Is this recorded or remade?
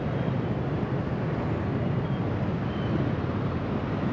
recorded